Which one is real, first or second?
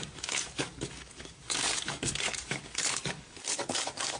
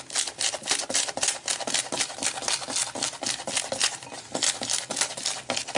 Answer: second